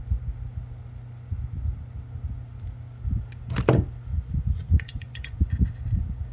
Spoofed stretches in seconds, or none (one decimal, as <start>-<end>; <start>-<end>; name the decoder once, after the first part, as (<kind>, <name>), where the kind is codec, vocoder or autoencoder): 4.1-5.4 (vocoder, Vocos)